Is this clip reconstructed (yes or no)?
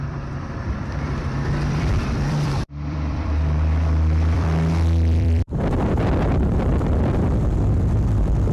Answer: yes